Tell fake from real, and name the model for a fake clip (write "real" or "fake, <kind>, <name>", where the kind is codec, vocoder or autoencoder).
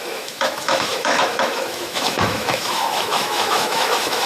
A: fake, autoencoder, DAC-VAE